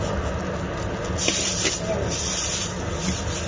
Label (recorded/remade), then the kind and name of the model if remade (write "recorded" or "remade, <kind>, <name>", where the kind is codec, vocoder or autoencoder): recorded